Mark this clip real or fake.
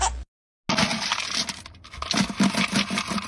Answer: real